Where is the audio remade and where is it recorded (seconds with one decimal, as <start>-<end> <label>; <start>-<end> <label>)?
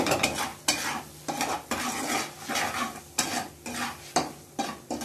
0.0-5.0 recorded